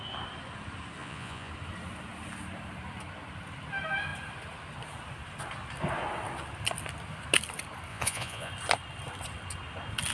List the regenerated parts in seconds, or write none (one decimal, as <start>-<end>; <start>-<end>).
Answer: 1.0-1.5; 7.9-8.5